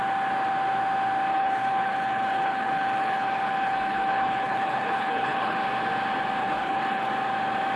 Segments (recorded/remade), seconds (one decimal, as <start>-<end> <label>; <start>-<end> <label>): 0.0-1.3 recorded; 1.3-5.6 remade; 5.6-6.4 recorded; 6.4-7.1 remade; 7.1-7.8 recorded